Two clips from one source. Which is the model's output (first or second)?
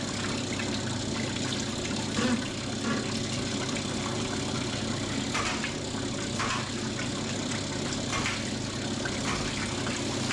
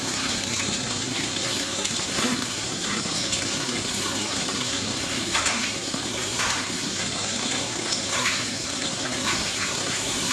second